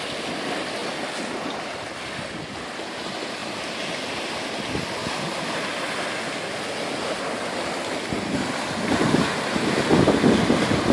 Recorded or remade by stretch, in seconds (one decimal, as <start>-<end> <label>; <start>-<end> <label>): 0.0-10.9 recorded